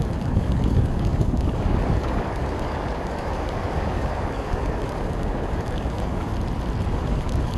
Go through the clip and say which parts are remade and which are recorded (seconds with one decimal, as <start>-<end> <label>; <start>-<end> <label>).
0.0-6.3 remade; 6.3-6.9 recorded; 6.9-7.6 remade